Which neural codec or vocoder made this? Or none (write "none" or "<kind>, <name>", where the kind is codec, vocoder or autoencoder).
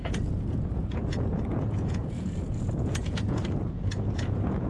vocoder, Vocos